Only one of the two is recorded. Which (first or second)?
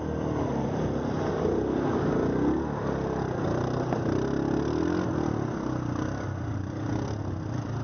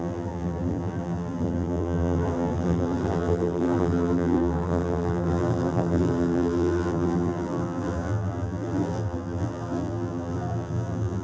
first